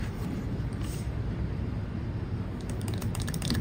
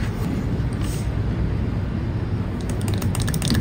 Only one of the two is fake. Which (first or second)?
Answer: first